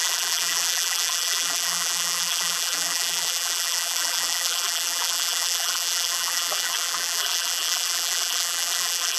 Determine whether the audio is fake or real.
fake